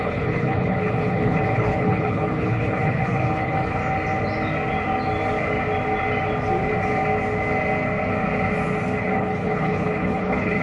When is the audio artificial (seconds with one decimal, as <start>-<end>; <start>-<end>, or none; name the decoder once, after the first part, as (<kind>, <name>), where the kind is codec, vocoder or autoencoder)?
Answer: 0.0-3.8 (codec, HILCodec); 9.0-10.6